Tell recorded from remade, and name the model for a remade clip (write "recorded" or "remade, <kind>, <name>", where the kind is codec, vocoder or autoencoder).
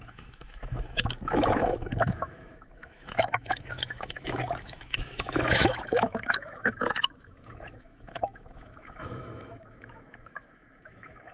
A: remade, autoencoder, DAC-VAE